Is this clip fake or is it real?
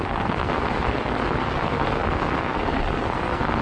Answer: fake